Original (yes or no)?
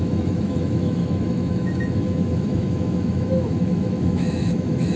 no